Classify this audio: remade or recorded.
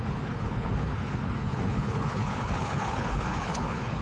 remade